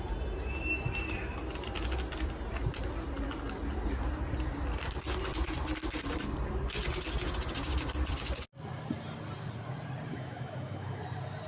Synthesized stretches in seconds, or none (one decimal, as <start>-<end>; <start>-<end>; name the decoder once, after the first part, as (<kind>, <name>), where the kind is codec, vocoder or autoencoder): 10.1-11.0 (autoencoder, DAC-VAE)